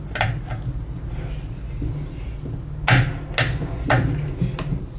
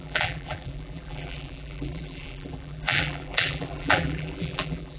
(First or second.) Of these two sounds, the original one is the first